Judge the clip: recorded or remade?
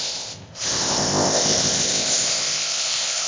remade